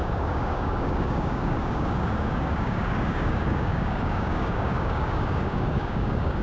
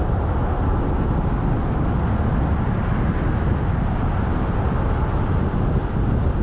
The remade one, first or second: first